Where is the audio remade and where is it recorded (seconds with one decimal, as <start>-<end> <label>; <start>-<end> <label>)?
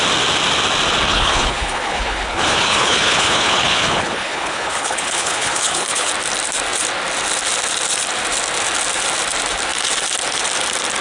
0.0-1.1 recorded; 1.1-6.1 remade; 6.1-11.0 recorded